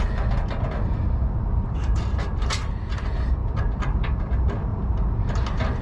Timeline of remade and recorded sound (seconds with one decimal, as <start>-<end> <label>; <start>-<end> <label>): 0.0-1.2 recorded; 1.2-2.0 remade; 2.0-4.7 recorded; 4.7-5.3 remade; 5.3-5.8 recorded